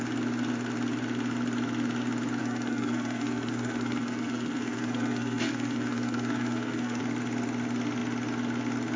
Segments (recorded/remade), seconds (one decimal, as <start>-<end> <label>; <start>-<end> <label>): 0.0-2.4 recorded; 2.4-7.0 remade; 7.0-9.0 recorded